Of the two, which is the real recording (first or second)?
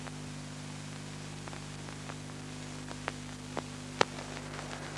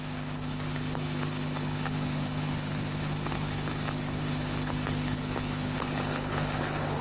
first